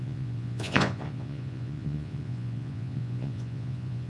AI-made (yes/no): yes